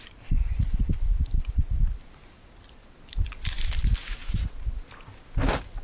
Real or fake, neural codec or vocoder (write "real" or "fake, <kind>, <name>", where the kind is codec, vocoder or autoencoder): real